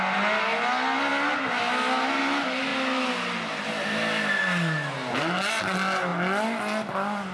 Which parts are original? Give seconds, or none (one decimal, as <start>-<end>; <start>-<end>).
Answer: 0.0-7.3